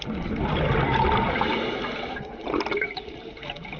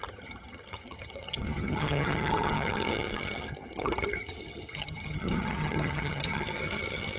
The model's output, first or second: second